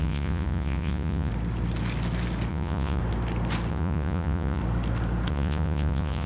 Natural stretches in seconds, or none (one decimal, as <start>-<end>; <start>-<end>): 1.3-2.5; 3.0-3.7; 4.6-5.3